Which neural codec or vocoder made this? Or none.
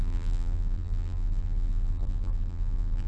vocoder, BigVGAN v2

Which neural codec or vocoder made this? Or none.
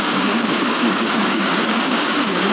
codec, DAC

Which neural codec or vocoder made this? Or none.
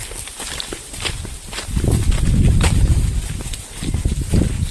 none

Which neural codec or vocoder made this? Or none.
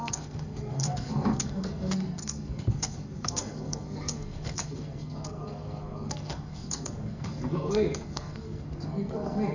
codec, SNAC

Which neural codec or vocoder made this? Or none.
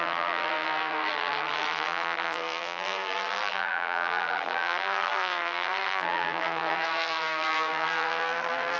vocoder, BigVGAN v2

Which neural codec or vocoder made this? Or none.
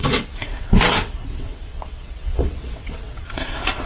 vocoder, WaveNeXt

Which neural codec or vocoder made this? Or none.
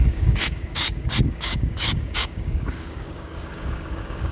codec, DAC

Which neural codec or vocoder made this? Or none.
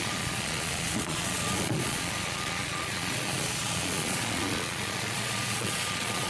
vocoder, Vocos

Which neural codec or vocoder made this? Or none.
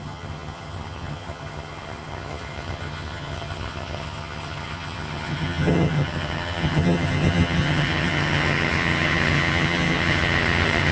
vocoder, HiFi-GAN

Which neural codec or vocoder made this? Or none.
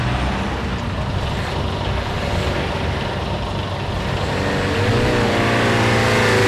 none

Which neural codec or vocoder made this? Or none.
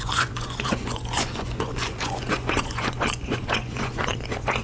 vocoder, Vocos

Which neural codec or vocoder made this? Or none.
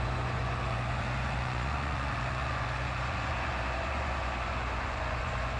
vocoder, Vocos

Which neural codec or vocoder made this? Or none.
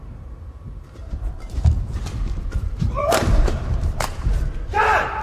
vocoder, BigVGAN v2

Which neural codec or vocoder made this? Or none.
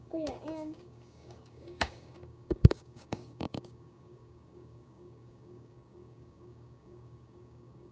codec, DAC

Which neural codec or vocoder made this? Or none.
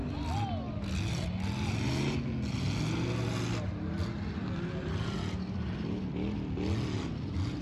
none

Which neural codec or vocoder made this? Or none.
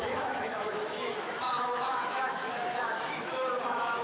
autoencoder, DAC-VAE